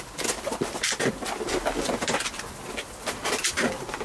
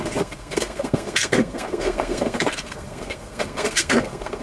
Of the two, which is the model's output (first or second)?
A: second